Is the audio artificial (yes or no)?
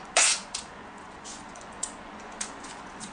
yes